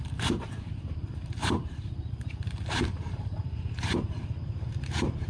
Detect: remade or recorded remade